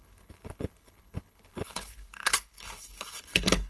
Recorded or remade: remade